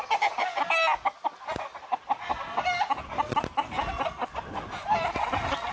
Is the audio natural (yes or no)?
yes